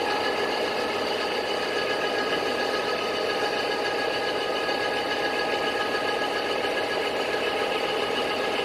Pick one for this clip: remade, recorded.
recorded